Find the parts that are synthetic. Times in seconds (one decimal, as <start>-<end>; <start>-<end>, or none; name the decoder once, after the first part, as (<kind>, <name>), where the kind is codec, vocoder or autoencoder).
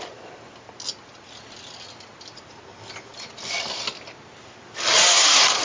none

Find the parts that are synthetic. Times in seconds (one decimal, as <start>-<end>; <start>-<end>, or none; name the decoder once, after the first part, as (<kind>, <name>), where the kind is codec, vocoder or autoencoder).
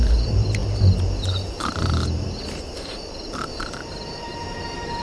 0.0-0.6 (vocoder, BigVGAN v2); 1.5-5.0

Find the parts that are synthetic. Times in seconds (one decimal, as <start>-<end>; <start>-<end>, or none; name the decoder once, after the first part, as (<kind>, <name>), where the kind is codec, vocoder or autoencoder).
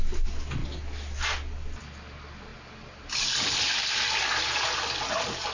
none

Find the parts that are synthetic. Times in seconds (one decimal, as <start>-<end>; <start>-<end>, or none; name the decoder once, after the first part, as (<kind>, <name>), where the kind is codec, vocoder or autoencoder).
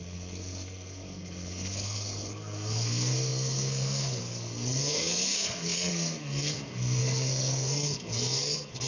0.0-8.9 (codec, SNAC)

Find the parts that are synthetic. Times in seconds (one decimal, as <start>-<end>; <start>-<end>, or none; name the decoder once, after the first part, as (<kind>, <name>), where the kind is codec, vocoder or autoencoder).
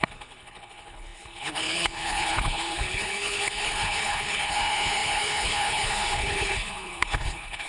0.0-7.7 (codec, HILCodec)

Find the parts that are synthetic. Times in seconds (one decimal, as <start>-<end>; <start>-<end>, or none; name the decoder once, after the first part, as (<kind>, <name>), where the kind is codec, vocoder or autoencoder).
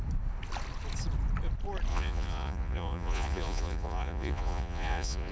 1.9-5.3 (vocoder, Vocos)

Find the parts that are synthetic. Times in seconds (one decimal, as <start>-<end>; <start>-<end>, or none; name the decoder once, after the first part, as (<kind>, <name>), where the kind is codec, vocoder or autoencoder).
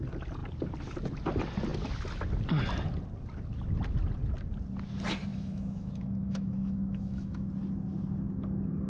5.3-7.5 (autoencoder, DAC-VAE)